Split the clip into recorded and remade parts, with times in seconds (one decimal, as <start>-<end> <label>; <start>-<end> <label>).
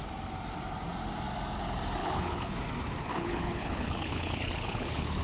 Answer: 0.0-2.0 recorded; 2.0-2.6 remade; 2.6-3.1 recorded; 3.1-5.2 remade